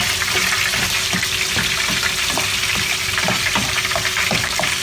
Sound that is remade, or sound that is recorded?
recorded